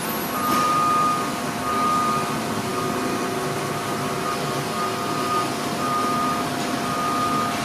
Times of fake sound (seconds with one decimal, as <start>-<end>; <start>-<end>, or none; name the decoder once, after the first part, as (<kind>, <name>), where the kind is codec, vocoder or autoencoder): none